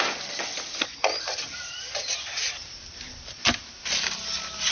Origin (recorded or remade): recorded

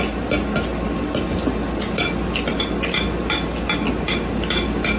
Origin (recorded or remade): recorded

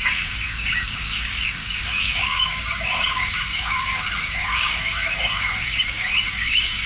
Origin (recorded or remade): remade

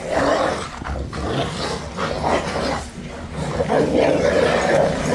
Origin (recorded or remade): recorded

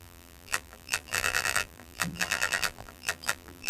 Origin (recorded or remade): remade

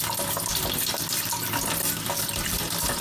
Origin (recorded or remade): recorded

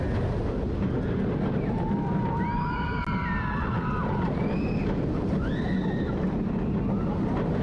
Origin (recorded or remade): recorded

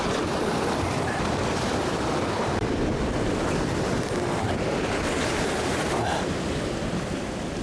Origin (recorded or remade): remade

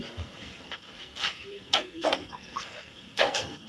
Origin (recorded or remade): remade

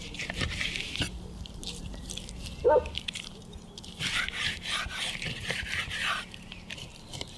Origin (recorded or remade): remade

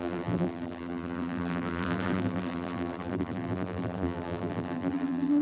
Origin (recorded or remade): remade